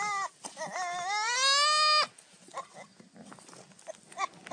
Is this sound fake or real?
real